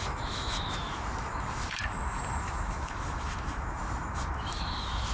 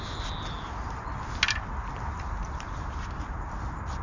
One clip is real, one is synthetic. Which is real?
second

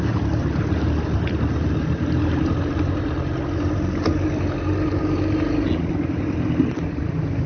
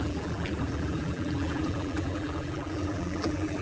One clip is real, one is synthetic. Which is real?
first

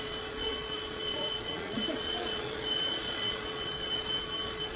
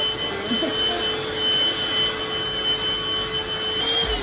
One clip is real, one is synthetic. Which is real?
second